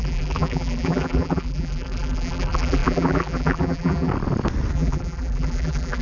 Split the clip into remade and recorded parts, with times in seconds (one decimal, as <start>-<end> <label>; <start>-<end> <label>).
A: 0.0-4.1 remade; 4.1-4.7 recorded; 4.7-6.0 remade

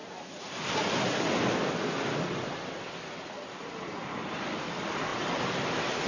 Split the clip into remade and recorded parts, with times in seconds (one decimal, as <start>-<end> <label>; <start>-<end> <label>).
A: 0.0-6.1 recorded

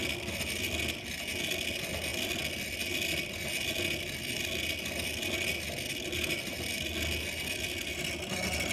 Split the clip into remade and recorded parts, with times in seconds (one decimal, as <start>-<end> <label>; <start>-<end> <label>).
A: 0.0-8.7 recorded

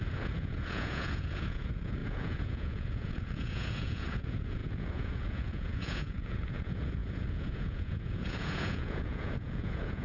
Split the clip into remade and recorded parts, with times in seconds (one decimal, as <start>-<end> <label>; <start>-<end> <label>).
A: 0.0-10.0 remade

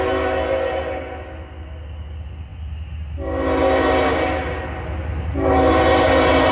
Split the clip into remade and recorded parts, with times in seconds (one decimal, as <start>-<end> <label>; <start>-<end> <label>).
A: 0.0-6.5 recorded

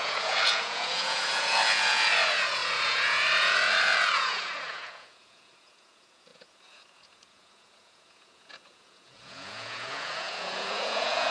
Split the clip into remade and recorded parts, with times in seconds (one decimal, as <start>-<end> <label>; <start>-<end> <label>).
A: 0.0-11.3 remade